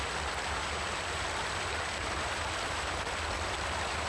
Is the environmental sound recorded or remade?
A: recorded